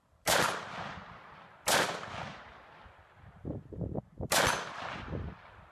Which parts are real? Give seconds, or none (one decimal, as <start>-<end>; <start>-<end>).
none